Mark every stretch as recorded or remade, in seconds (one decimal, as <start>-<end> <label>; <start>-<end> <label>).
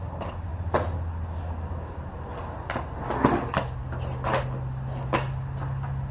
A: 0.0-6.1 recorded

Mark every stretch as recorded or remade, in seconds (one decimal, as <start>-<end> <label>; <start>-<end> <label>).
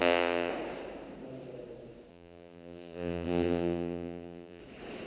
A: 0.0-0.5 remade; 0.5-2.1 recorded; 2.1-4.6 remade; 4.6-5.1 recorded